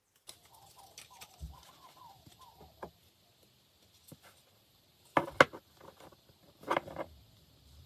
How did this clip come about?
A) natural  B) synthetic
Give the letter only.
A